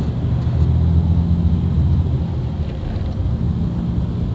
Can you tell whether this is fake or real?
real